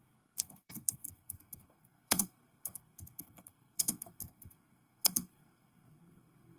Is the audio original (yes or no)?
no